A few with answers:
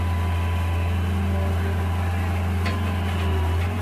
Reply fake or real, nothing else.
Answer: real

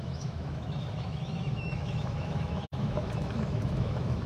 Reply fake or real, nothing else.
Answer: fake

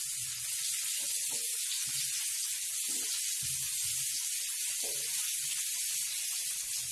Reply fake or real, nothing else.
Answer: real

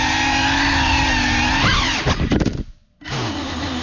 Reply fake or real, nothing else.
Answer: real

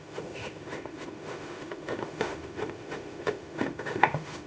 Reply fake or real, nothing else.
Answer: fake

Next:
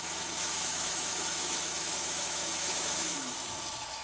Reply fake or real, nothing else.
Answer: fake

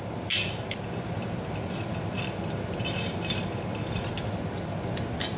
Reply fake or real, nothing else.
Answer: real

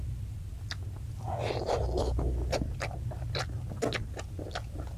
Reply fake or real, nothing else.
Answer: real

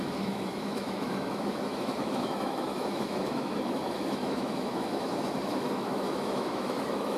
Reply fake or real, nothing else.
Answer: fake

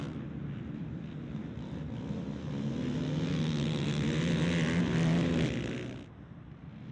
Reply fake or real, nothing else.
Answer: real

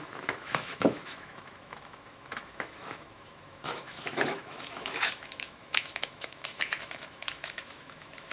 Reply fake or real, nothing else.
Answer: fake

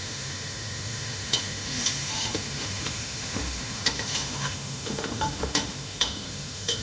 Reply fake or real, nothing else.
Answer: fake